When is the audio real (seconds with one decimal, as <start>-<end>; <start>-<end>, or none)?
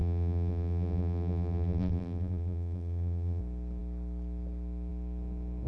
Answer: 3.4-5.7